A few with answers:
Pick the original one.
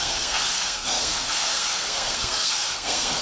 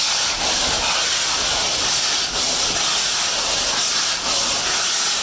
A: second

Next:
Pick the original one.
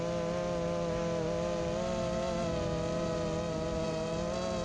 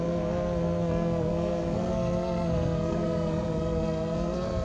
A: first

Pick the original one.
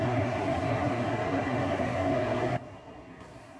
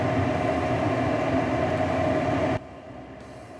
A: second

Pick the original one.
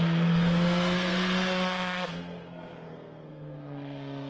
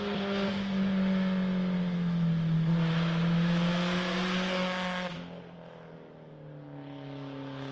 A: second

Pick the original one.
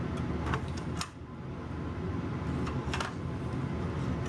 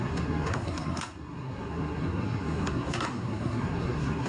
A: first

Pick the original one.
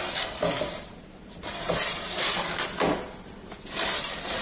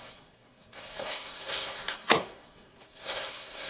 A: first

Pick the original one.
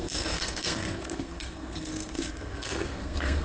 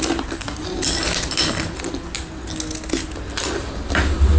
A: second